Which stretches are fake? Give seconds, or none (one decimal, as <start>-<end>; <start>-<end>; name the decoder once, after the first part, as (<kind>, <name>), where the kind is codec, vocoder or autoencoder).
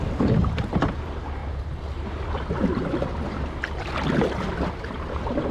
0.0-1.4 (vocoder, BigVGAN v2); 4.7-5.5